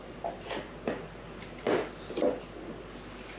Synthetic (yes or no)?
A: no